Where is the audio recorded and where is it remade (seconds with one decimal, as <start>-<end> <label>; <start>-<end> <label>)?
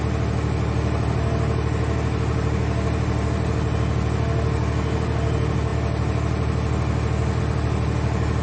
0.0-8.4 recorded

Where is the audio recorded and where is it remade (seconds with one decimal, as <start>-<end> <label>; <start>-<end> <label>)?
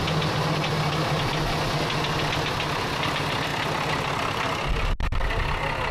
0.0-5.9 recorded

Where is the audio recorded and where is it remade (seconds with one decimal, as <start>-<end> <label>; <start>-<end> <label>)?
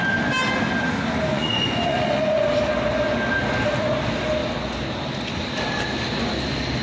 0.0-1.3 recorded; 1.3-2.4 remade; 2.4-6.8 recorded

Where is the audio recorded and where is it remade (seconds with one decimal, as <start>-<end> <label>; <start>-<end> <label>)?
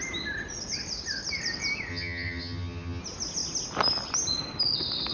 0.0-1.9 recorded; 1.9-3.0 remade; 3.0-5.1 recorded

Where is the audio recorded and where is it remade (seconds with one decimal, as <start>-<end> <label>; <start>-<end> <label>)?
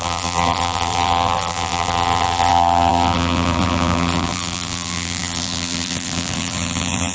0.0-7.1 remade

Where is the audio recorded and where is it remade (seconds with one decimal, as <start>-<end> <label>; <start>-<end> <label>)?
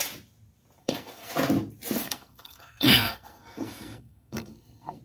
0.0-0.8 recorded; 0.8-1.3 remade; 1.3-2.0 recorded; 2.0-5.0 remade